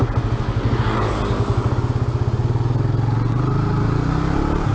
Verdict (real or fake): real